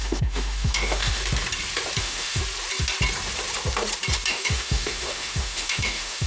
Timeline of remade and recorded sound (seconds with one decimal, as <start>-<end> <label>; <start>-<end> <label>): 0.0-1.2 remade; 1.2-2.0 recorded; 2.0-2.4 remade; 2.4-4.3 recorded; 4.3-6.3 remade